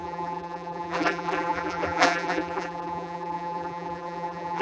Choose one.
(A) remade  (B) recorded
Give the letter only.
A